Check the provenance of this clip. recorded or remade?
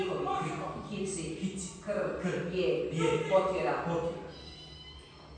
recorded